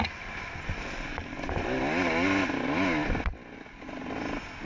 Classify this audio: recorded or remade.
recorded